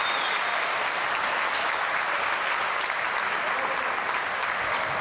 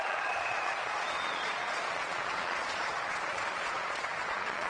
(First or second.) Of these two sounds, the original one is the first